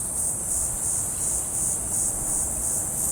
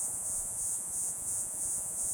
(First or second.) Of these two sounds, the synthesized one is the second